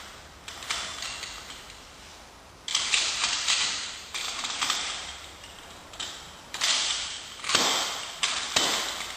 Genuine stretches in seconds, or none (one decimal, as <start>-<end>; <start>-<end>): 0.0-2.7; 7.5-9.2